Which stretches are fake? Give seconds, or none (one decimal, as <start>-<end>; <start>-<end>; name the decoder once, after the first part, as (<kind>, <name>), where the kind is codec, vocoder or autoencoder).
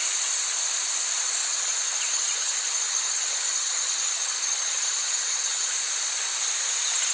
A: 1.4-5.7 (vocoder, HiFi-GAN)